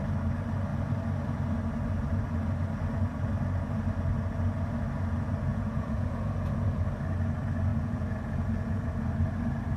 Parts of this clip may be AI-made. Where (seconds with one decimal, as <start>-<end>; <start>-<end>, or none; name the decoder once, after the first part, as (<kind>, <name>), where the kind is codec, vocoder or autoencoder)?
5.5-6.8 (vocoder, Vocos); 7.7-9.1